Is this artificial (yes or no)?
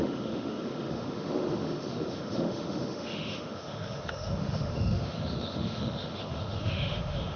yes